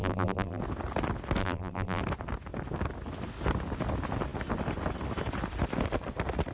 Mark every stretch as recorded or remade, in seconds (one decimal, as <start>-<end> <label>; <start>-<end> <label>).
0.0-0.6 remade; 0.6-1.4 recorded; 1.4-2.0 remade; 2.0-6.5 recorded